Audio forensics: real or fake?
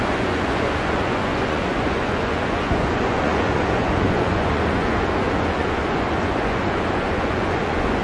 fake